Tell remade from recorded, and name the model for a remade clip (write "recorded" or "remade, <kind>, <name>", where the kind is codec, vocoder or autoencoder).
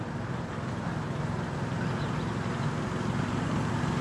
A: recorded